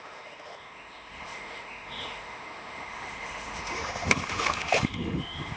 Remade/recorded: remade